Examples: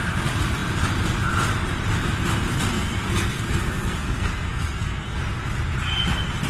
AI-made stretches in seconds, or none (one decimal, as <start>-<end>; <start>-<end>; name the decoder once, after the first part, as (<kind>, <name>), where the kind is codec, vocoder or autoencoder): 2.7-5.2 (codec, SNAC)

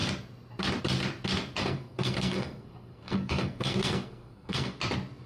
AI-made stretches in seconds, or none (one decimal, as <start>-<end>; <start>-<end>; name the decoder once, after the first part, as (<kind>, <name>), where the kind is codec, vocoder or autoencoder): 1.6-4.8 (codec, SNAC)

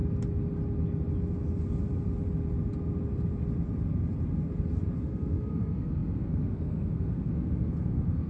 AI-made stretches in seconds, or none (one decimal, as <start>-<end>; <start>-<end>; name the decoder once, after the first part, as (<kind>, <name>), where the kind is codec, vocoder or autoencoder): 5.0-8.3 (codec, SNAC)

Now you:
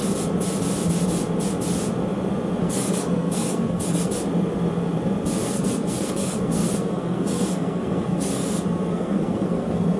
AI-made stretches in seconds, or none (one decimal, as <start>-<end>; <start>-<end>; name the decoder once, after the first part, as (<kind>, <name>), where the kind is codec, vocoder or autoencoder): 2.6-4.1 (codec, SNAC); 5.4-10.0